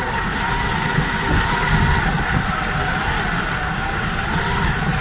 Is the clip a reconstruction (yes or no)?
no